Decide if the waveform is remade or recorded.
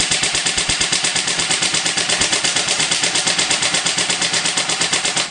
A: remade